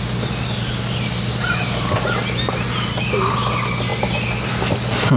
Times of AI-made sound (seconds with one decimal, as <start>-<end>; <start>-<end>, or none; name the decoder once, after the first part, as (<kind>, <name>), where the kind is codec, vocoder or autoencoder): none